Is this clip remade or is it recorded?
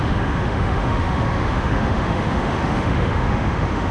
remade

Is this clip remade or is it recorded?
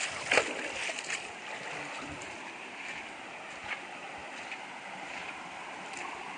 recorded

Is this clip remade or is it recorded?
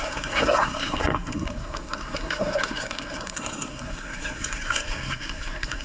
remade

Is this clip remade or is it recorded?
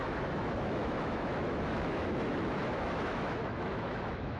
remade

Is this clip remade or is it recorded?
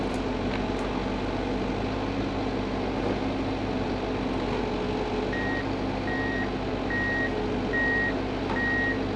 recorded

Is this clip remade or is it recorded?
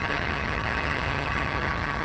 remade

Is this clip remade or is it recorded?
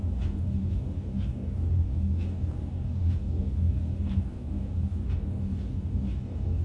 remade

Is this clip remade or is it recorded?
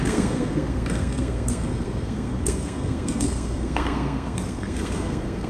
remade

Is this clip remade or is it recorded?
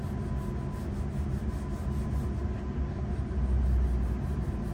recorded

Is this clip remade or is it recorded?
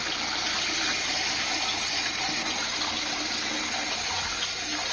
recorded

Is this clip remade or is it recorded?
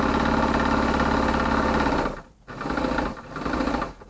recorded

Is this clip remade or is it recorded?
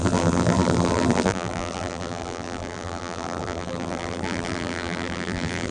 remade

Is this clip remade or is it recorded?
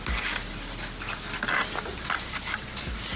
recorded